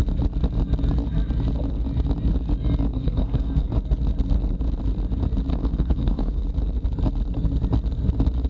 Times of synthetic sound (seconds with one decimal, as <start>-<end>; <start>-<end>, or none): 2.9-3.7; 5.5-6.4